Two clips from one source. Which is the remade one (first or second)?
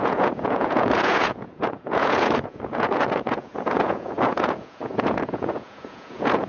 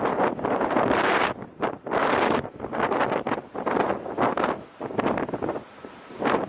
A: first